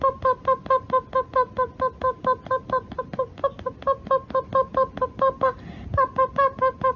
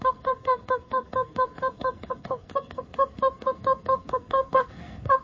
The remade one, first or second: second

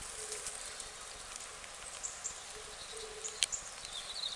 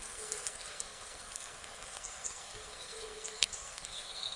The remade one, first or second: second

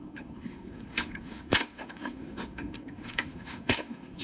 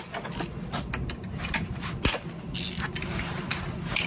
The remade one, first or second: first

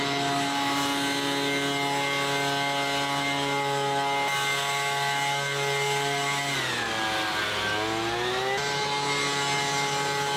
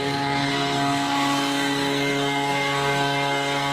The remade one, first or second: second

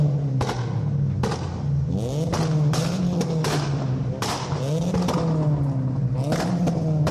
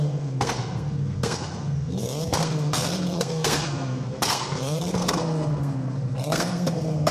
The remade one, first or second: second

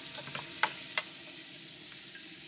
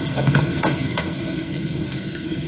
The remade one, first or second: second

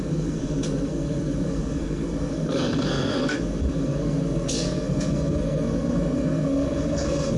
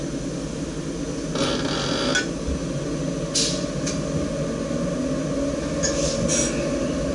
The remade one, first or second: first